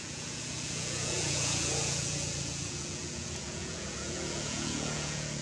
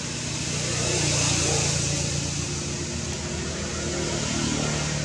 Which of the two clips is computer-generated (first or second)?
first